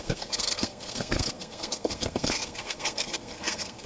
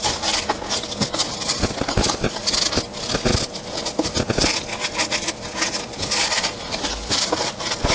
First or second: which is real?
second